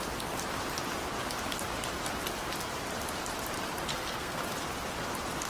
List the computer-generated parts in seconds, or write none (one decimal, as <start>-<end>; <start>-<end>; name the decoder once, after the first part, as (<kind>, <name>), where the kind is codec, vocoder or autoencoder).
3.9-4.4 (codec, SNAC)